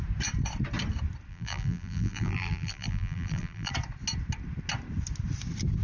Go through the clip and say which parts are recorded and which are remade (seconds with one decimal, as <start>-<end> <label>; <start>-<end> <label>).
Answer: 0.0-1.3 recorded; 1.3-3.7 remade; 3.7-5.8 recorded

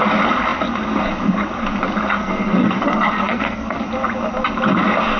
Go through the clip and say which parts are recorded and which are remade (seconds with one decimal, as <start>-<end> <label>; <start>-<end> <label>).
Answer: 0.0-2.2 recorded; 2.2-3.8 remade; 3.8-5.2 recorded

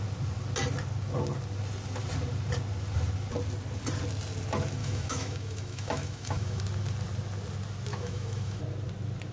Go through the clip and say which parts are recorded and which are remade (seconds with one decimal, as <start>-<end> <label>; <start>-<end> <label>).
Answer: 0.0-4.8 recorded; 4.8-6.6 remade; 6.6-7.9 recorded; 7.9-8.6 remade; 8.6-9.3 recorded

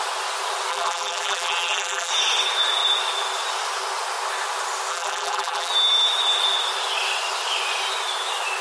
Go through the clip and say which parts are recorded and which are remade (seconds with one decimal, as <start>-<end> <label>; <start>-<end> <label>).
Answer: 0.0-0.7 recorded; 0.7-2.1 remade; 2.1-4.9 recorded; 4.9-5.7 remade; 5.7-8.6 recorded

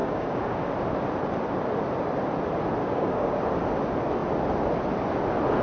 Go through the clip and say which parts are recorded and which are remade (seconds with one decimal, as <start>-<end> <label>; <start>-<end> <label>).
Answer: 0.0-0.7 remade; 0.7-2.8 recorded; 2.8-3.4 remade; 3.4-5.6 recorded

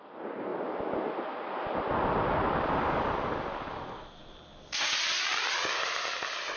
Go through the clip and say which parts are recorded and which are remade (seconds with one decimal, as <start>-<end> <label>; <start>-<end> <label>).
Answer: 0.0-6.6 recorded

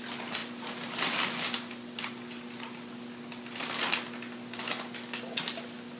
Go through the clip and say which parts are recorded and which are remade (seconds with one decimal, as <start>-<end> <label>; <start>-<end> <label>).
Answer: 0.0-6.0 recorded